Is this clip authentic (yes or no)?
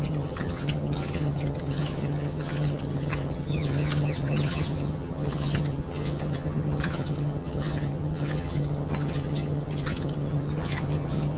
no